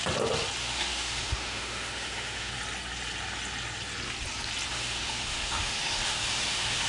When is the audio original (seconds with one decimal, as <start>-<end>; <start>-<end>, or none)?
0.0-0.6; 2.5-4.7